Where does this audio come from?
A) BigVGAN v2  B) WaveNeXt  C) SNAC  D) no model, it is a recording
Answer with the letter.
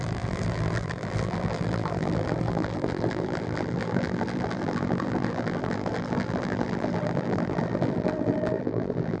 A